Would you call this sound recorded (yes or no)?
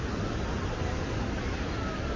yes